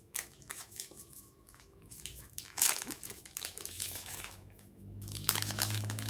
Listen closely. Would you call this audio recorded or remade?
remade